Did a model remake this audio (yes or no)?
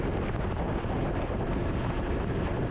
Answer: no